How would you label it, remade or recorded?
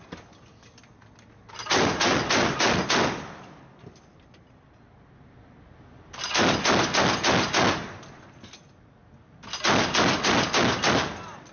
recorded